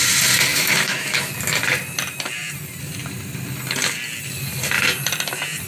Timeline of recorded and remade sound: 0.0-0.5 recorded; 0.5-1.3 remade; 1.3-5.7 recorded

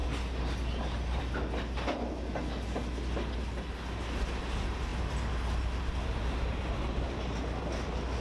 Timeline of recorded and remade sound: 0.0-8.2 recorded